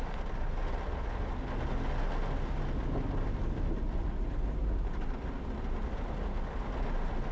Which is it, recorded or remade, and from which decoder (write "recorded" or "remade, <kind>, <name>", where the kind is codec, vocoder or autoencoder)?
recorded